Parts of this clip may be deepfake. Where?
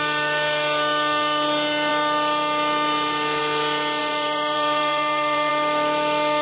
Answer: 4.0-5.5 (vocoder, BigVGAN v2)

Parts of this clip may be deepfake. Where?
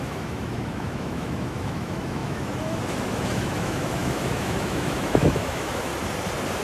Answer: 0.0-5.9 (autoencoder, DAC-VAE)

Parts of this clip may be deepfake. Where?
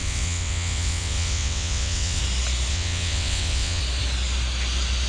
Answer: 0.0-2.2 (vocoder, WaveNeXt); 2.7-3.8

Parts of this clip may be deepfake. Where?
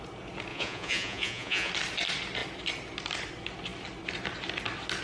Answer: 0.5-1.7 (vocoder, Vocos)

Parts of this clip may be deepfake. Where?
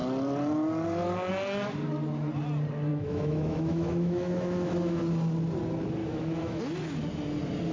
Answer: 2.9-5.0 (autoencoder, DAC-VAE); 6.0-6.6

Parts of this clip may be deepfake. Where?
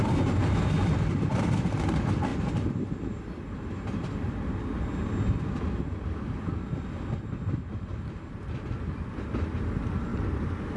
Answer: 10.1-10.8 (vocoder, BigVGAN v2)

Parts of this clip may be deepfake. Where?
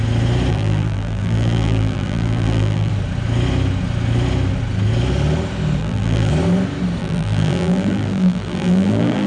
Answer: 0.5-2.9 (vocoder, BigVGAN v2); 5.8-6.3; 7.0-9.3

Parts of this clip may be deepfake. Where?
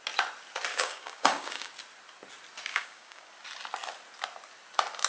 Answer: 0.7-1.7 (codec, DAC); 2.7-3.3